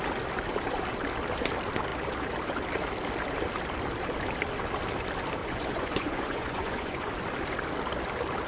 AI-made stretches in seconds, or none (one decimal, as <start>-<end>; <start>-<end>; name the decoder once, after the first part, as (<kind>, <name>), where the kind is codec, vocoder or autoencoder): 5.4-7.1 (vocoder, Vocos)